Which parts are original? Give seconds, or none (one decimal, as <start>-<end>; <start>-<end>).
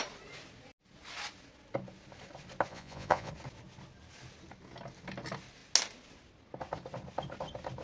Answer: 0.0-2.7; 3.3-7.8